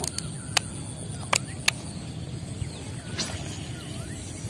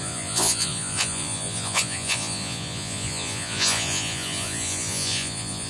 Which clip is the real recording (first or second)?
first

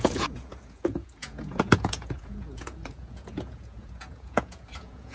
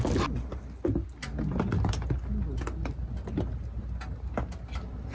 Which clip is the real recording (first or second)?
second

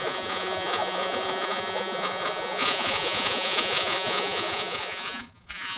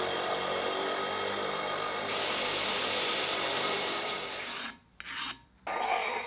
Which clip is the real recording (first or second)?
second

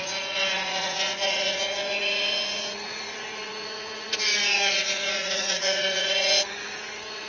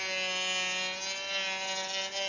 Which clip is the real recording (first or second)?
second